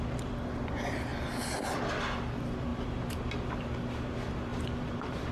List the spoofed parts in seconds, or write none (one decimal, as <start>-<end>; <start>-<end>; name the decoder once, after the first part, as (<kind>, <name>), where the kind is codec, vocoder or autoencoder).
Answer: 2.7-3.2 (vocoder, BigVGAN v2); 4.5-5.3